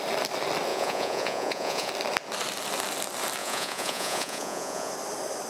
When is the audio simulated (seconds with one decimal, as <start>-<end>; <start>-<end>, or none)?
0.7-1.9; 3.4-4.9

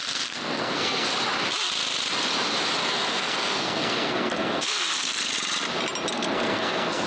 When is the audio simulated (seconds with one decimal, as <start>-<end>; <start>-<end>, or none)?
0.0-1.1; 2.9-5.3; 6.1-7.1

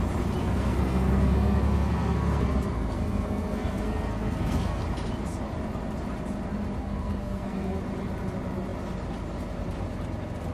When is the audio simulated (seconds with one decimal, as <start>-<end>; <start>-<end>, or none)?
0.4-4.8; 6.8-7.8

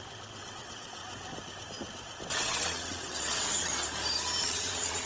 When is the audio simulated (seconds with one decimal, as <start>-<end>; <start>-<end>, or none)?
0.0-1.0; 2.3-3.7; 4.4-5.1

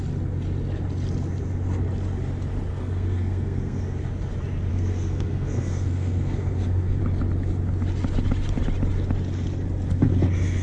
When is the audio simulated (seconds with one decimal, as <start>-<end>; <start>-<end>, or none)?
2.7-3.8; 4.7-7.0

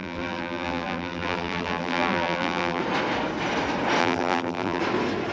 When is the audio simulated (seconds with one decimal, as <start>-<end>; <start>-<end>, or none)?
0.0-2.8; 4.0-4.8

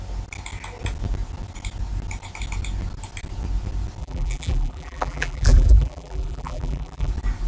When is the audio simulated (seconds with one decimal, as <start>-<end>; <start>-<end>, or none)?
4.0-7.1

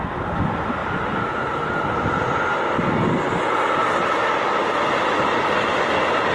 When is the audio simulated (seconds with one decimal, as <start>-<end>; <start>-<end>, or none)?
none